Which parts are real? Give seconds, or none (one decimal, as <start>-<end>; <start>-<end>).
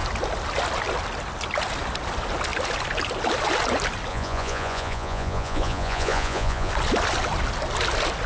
0.0-4.1; 6.7-8.3